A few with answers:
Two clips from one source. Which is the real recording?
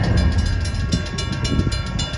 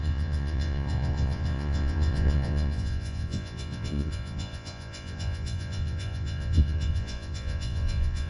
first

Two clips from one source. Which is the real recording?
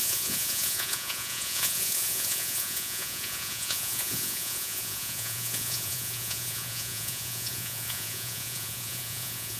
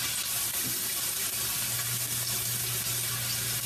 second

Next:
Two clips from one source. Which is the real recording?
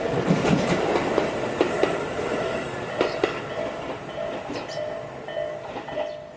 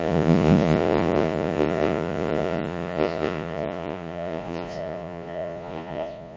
first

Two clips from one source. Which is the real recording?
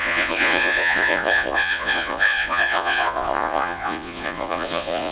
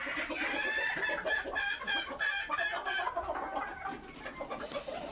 second